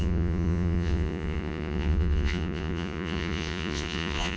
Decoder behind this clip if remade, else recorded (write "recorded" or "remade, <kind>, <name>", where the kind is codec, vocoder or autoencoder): remade, vocoder, Vocos